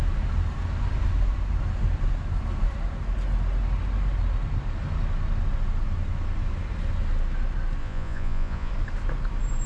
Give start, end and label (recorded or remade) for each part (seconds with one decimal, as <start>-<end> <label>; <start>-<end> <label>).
0.0-7.8 recorded; 7.8-8.7 remade; 8.7-9.7 recorded